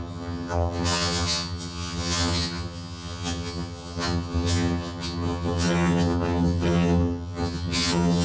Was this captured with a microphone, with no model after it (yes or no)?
no